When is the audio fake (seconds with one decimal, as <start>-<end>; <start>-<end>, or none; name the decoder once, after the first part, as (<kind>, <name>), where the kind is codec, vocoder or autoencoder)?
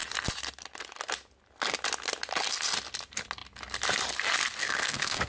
4.6-5.3 (codec, SNAC)